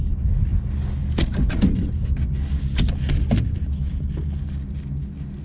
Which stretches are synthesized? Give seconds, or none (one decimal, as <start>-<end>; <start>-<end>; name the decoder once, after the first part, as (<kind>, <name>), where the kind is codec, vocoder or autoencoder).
none